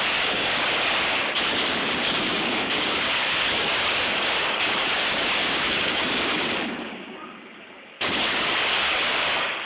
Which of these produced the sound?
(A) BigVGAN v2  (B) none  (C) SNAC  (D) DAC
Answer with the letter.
D